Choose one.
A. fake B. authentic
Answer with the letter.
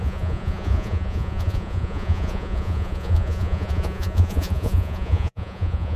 A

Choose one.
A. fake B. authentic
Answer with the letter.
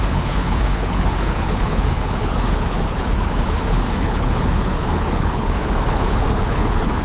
A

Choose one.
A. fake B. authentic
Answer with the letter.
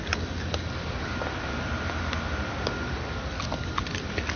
B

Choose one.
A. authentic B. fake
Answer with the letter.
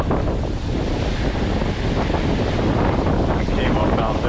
A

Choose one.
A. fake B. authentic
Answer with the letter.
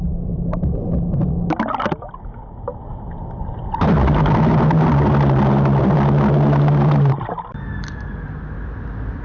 B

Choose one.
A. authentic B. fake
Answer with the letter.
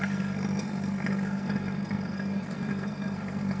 B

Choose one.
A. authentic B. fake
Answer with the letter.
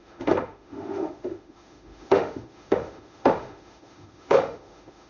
B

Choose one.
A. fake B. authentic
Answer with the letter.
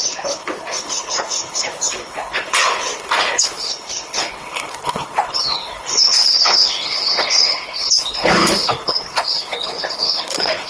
A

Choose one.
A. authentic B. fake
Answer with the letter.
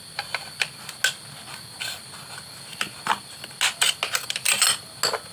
A